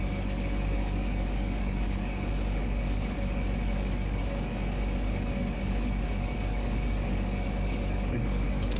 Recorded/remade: remade